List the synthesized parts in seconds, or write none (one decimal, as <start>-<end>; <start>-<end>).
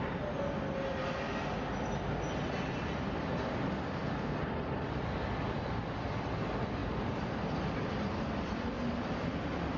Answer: 6.8-8.4